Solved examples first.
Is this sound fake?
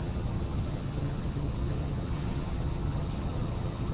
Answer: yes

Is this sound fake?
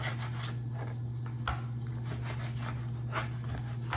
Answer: no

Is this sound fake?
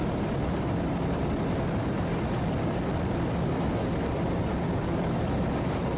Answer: no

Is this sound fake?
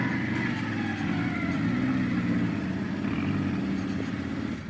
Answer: no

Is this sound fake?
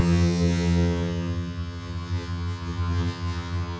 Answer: yes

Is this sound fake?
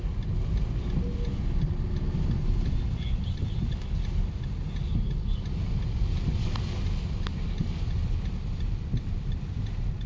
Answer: no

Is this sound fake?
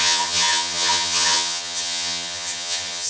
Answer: yes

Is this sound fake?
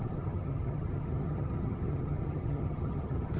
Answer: yes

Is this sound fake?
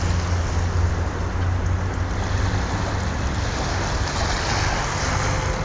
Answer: no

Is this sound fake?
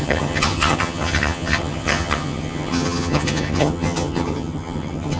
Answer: yes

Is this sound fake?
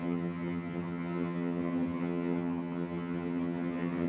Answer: yes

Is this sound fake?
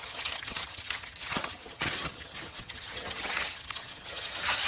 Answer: yes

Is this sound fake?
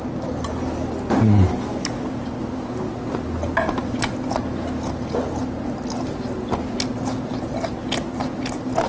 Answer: no